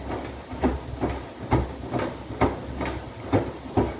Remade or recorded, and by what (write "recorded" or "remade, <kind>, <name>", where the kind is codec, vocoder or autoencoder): recorded